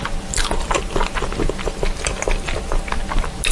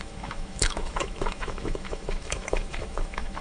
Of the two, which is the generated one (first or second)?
second